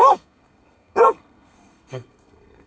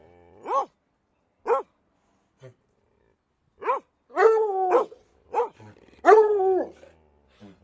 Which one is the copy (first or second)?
first